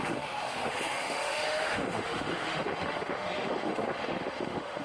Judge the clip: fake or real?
fake